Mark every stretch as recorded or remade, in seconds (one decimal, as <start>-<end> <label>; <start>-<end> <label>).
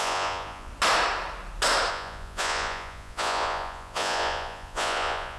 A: 0.0-0.7 remade; 0.7-1.9 recorded; 1.9-5.4 remade